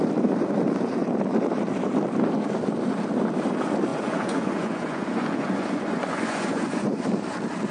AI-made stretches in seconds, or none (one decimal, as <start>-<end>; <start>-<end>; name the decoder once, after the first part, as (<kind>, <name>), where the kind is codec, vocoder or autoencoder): 3.9-7.0 (vocoder, Vocos)